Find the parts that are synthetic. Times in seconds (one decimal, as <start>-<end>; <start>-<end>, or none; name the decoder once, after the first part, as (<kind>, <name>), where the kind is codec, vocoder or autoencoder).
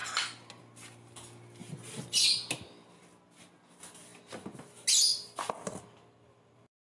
none